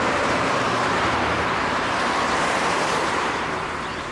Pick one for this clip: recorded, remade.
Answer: remade